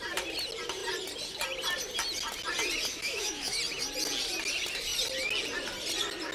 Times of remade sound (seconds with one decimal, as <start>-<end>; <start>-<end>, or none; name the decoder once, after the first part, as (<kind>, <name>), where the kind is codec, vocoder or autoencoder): 2.9-3.6 (autoencoder, DAC-VAE)